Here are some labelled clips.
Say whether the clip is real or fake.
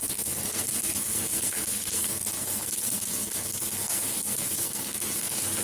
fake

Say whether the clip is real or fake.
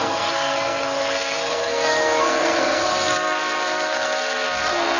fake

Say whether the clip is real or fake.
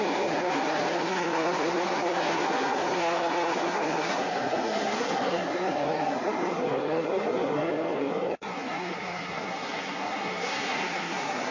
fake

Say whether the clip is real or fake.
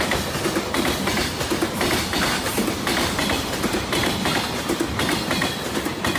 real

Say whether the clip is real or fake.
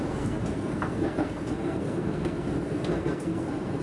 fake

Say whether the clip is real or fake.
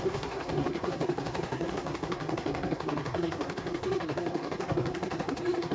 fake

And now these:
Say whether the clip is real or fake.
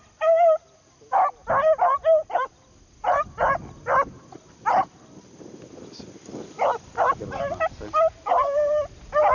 real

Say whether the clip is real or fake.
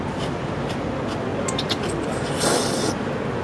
real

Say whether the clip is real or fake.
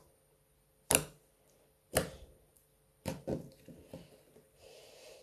real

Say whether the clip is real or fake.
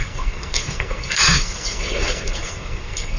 fake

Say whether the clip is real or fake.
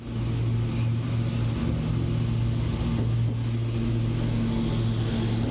real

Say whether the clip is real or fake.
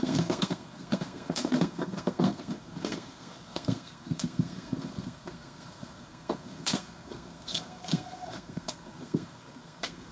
fake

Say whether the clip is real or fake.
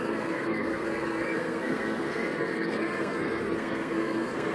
fake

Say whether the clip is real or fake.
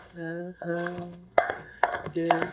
fake